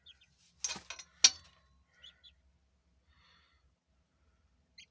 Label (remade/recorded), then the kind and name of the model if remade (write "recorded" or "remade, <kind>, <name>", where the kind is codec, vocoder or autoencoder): recorded